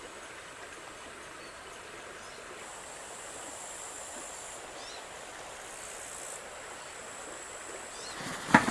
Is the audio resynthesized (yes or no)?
no